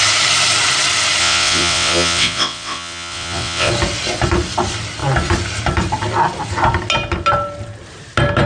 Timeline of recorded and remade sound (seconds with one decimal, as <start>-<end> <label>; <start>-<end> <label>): 0.0-1.2 recorded; 1.2-3.7 remade; 3.7-8.5 recorded